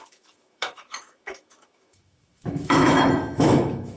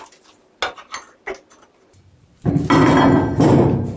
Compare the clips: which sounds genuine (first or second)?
second